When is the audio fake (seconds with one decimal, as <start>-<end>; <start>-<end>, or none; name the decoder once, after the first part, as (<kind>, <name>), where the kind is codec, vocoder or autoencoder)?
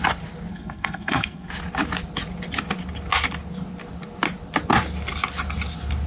0.5-1.5 (codec, SNAC)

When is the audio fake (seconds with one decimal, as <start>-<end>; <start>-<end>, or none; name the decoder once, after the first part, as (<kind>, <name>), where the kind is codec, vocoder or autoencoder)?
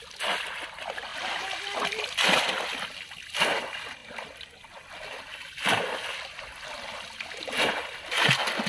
none